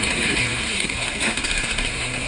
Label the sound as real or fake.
fake